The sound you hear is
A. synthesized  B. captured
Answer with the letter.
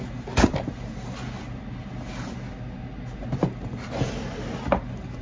B